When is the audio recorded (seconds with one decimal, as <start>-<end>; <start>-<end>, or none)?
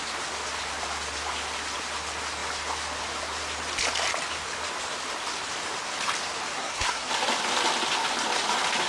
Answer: 0.0-6.6; 7.1-8.9